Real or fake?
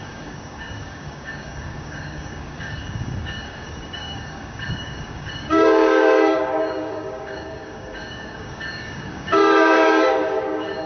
fake